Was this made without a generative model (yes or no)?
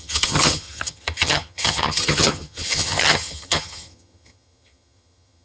no